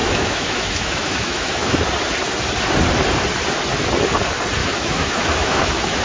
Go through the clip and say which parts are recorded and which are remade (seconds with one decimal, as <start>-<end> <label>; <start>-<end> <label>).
0.0-1.8 remade; 1.8-4.6 recorded; 4.6-6.0 remade